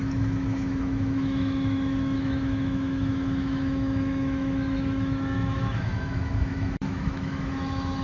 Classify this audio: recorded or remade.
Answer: remade